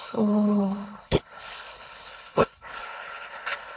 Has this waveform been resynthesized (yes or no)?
yes